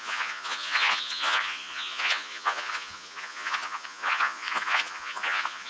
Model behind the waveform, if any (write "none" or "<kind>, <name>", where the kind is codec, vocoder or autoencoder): vocoder, Vocos